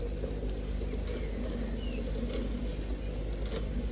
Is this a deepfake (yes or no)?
no